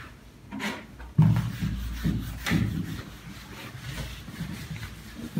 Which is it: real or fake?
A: real